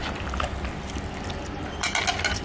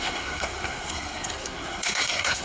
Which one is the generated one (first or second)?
second